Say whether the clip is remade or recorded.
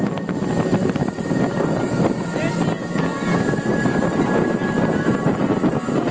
recorded